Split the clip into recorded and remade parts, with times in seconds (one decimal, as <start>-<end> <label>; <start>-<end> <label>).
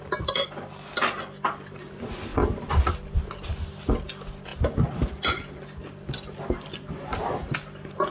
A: 0.0-8.1 recorded